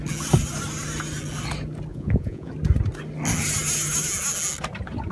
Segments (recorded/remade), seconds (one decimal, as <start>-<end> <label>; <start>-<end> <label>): 0.0-1.9 recorded; 1.9-2.5 remade; 2.5-5.1 recorded